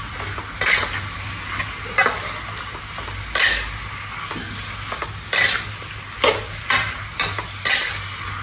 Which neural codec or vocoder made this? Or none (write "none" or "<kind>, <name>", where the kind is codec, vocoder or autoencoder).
none